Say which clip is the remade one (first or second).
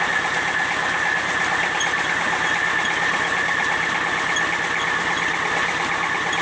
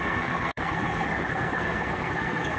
second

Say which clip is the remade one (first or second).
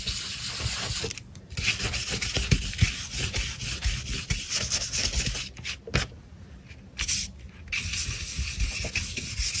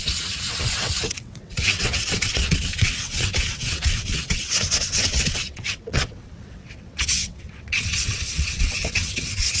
second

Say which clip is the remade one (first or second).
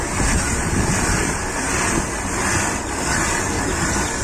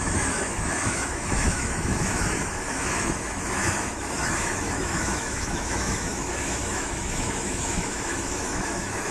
second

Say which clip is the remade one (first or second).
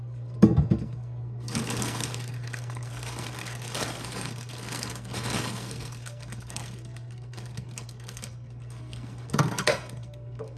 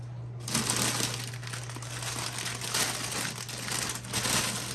first